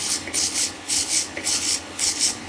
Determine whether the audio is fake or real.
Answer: fake